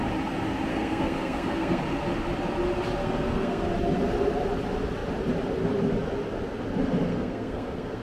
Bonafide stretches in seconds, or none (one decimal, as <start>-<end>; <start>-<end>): 0.0-0.7; 1.8-3.0; 3.7-7.1